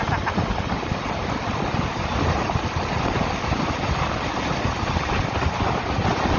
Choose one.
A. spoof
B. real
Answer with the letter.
B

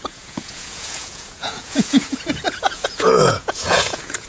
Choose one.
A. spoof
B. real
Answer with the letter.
A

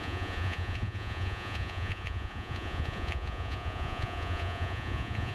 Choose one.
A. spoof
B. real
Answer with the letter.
A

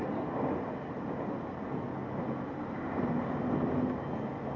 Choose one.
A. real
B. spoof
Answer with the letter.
A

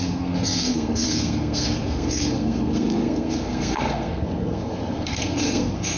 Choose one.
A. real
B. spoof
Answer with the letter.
B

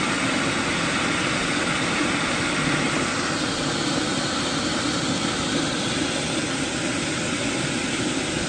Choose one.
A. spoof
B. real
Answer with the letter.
B